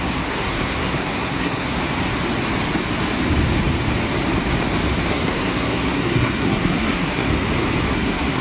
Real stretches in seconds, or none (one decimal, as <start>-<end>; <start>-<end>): 1.8-5.1; 7.3-7.9